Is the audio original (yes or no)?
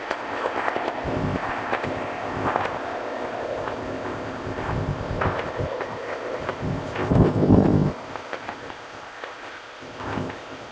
no